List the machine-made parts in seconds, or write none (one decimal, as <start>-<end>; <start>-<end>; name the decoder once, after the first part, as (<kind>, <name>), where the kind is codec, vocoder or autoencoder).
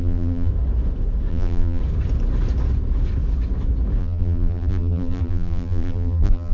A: 0.0-0.5 (vocoder, BigVGAN v2); 1.3-1.8; 4.0-6.5